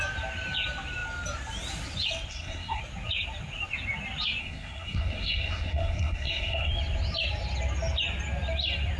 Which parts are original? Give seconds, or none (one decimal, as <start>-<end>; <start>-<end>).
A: 0.0-2.3; 2.8-4.4; 6.7-9.0